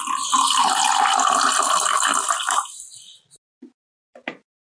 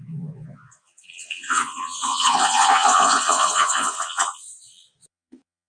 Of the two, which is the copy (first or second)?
second